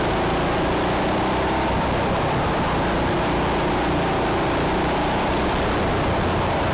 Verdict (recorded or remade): recorded